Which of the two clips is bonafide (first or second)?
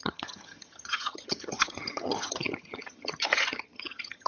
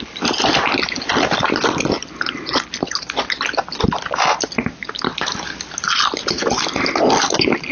second